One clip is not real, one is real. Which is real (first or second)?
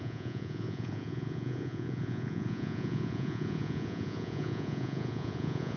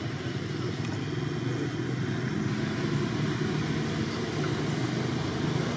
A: second